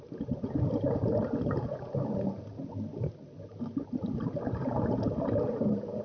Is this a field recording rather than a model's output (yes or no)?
yes